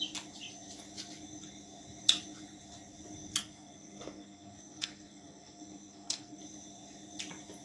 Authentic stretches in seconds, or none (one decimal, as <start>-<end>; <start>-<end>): 0.0-3.4; 6.4-7.6